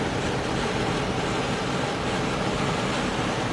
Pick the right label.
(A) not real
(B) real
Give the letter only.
B